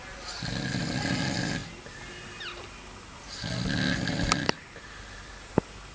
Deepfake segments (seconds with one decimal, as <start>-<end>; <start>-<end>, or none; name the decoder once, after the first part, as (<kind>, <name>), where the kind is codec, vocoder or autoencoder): none